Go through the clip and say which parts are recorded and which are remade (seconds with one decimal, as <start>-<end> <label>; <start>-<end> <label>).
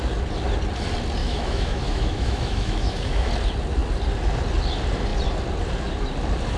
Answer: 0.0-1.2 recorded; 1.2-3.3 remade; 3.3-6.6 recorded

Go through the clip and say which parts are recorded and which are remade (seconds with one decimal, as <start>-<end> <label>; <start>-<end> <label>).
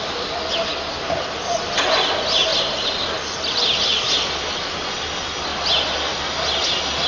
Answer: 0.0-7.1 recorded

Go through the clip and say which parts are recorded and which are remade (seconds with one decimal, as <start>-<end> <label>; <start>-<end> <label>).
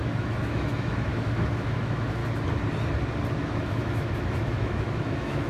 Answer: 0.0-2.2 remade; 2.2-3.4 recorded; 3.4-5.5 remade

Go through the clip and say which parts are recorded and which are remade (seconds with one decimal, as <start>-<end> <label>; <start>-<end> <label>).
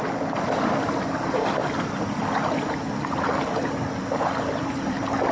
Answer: 0.0-5.3 recorded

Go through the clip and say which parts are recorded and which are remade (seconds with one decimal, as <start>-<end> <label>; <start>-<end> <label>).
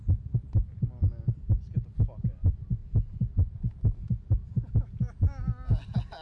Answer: 0.0-6.2 recorded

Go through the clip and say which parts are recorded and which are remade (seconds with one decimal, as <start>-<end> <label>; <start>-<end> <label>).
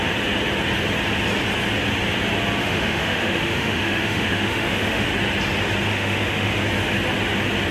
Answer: 0.0-2.6 recorded; 2.6-5.1 remade; 5.1-5.9 recorded; 5.9-6.6 remade; 6.6-7.7 recorded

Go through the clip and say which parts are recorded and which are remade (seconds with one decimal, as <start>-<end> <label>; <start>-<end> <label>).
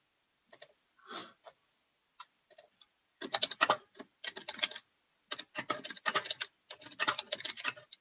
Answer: 0.0-8.0 recorded